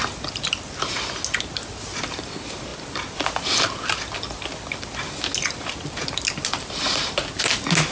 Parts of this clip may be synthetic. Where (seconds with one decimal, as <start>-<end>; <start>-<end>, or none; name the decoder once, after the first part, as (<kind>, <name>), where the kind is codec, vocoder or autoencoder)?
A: none